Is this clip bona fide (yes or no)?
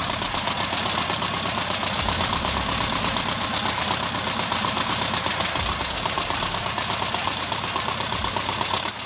no